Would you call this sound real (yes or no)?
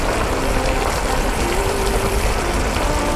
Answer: yes